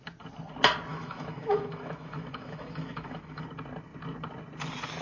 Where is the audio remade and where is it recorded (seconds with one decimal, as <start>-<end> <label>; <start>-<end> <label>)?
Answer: 0.0-0.9 recorded; 0.9-3.4 remade; 3.4-5.0 recorded